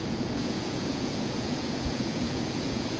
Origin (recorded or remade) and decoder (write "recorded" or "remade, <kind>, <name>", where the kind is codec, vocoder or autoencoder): remade, vocoder, Vocos